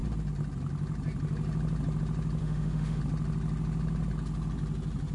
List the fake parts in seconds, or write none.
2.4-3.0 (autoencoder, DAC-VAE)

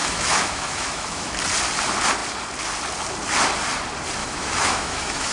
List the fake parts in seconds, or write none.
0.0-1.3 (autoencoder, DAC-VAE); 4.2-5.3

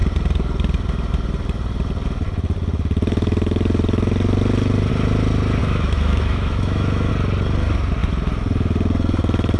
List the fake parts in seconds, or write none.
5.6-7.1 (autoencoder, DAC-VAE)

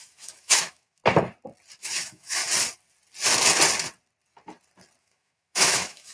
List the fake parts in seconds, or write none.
0.0-1.0 (autoencoder, DAC-VAE); 1.8-2.4; 5.0-6.1

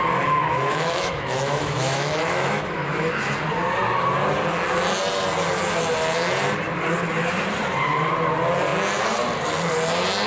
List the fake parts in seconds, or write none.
0.4-3.1 (autoencoder, DAC-VAE)